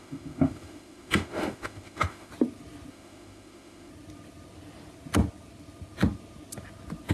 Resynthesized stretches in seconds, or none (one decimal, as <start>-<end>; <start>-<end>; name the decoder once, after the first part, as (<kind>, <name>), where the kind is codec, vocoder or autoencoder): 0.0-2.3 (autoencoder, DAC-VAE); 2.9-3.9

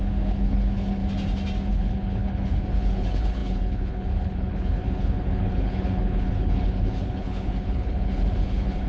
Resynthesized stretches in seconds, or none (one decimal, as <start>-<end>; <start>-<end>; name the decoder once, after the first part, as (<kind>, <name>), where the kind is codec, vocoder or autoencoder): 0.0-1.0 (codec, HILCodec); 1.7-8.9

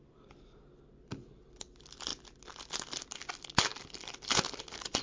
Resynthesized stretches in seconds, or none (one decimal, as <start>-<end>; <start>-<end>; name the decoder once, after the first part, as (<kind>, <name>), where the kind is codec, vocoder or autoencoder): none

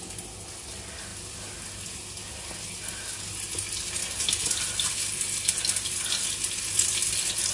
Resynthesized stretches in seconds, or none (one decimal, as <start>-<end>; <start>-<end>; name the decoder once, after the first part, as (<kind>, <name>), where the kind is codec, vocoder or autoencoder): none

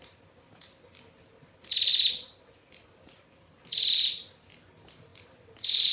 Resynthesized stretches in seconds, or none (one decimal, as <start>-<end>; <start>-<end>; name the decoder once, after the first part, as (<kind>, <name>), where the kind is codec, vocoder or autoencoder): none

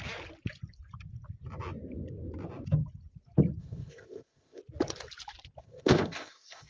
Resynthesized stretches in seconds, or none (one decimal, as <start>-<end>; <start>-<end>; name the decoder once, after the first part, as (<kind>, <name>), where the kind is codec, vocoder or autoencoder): 3.6-4.6 (codec, ZipCodec); 5.6-6.7